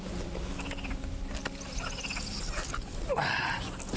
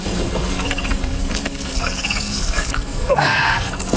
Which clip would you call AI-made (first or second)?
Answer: second